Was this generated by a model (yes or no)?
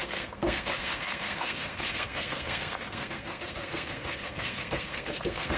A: yes